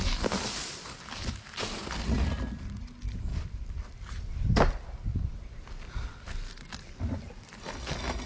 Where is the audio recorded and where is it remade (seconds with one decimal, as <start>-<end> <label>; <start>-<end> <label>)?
0.0-8.3 recorded